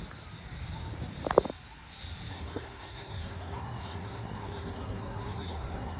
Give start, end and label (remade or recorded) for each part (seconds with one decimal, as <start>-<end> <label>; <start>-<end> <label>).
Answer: 0.0-2.3 recorded; 2.3-6.0 remade